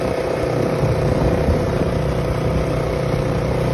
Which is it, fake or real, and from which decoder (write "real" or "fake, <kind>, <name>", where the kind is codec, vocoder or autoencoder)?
fake, vocoder, BigVGAN v2